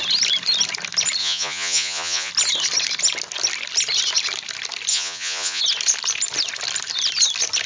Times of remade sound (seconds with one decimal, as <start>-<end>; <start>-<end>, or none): 1.2-2.3; 4.9-5.6